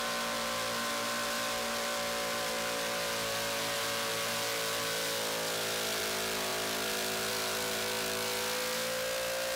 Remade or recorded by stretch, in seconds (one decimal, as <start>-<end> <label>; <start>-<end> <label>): 0.0-9.6 recorded